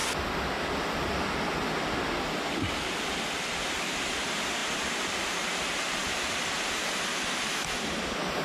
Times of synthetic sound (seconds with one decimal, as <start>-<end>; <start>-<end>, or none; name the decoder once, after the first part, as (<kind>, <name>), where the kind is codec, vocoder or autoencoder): 0.6-8.4 (vocoder, BigVGAN v2)

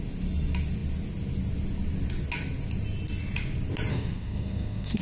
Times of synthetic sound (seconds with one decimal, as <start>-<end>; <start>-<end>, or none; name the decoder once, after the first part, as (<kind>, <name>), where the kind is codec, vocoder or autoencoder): 3.9-5.0 (codec, SNAC)

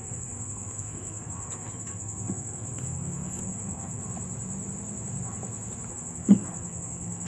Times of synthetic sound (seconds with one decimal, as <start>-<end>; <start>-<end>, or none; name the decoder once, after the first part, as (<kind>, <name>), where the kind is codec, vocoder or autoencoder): 0.0-4.0 (codec, SNAC); 5.9-7.3

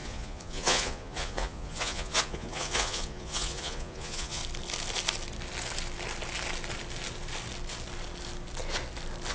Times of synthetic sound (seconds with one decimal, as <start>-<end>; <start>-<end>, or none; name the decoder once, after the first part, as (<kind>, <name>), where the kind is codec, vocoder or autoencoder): 0.0-4.4 (vocoder, Vocos)

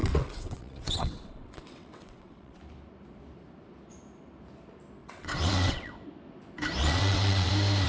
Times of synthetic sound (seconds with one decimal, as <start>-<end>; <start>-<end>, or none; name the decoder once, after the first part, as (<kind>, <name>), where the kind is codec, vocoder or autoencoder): 0.0-2.6 (vocoder, WaveNeXt); 5.0-5.9; 6.8-7.5